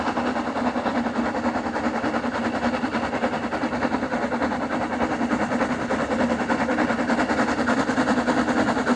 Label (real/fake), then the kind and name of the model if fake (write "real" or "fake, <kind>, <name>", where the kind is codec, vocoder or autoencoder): real